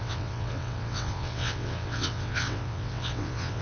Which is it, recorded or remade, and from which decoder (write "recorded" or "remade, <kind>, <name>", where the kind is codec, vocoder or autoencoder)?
remade, vocoder, WaveNeXt